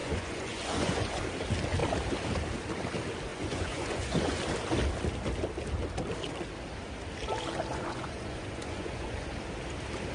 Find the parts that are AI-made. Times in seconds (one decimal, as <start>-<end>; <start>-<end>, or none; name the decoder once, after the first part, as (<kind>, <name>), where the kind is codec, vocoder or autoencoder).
0.0-1.2 (vocoder, Vocos); 3.3-4.4; 7.7-9.3